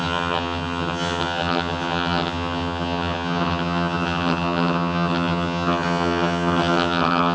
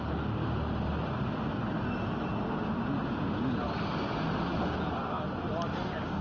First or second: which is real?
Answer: second